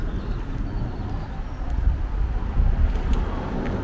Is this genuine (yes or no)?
yes